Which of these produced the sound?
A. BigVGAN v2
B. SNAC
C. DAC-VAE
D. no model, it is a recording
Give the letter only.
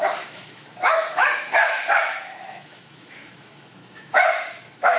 C